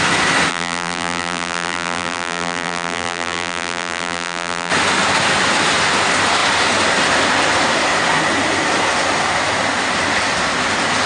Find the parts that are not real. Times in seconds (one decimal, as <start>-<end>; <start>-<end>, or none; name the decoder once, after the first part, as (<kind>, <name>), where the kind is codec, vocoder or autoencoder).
0.5-4.7 (vocoder, BigVGAN v2)